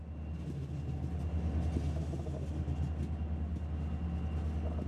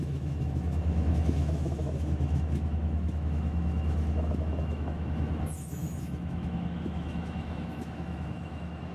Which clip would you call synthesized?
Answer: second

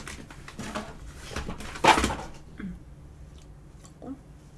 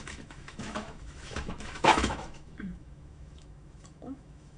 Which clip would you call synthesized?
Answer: second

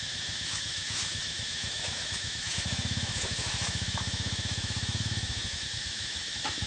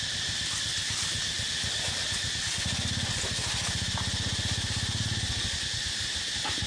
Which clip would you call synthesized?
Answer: first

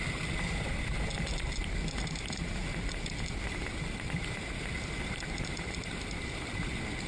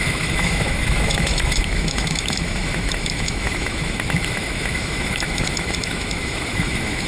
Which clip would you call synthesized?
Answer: second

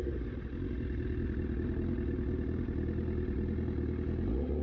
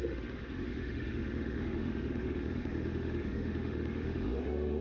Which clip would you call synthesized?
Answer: second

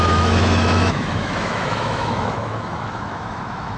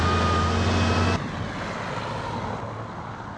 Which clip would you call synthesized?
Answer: first